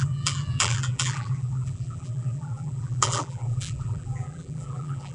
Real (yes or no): no